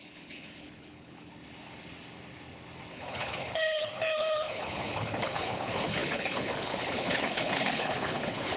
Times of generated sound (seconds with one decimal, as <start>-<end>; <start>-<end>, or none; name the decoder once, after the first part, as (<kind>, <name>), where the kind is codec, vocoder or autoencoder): 0.0-1.3 (codec, HILCodec); 2.9-8.6